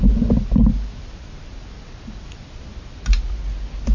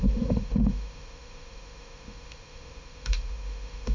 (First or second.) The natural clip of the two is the first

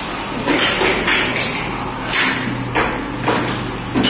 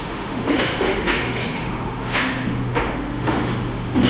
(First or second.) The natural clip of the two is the first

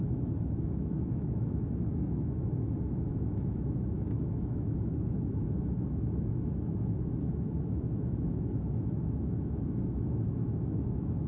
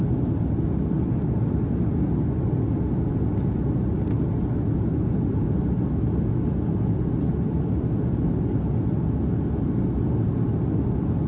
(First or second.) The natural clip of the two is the second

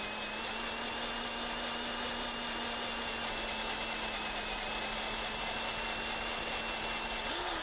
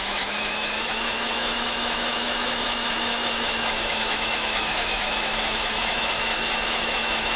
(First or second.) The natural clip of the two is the first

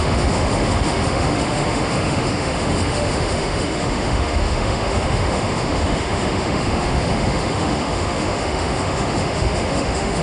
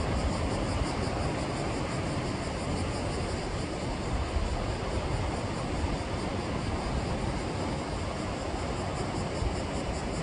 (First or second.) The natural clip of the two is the second